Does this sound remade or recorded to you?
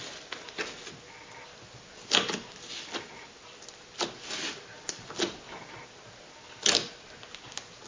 recorded